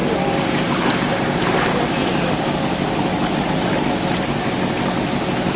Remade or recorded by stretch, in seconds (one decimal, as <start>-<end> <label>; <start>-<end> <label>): 0.0-1.4 remade; 1.4-5.6 recorded

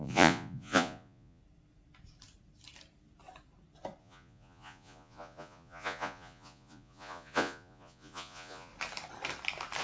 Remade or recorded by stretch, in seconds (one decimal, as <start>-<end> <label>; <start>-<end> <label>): 0.0-1.4 remade; 1.4-4.0 recorded; 4.0-8.7 remade; 8.7-9.8 recorded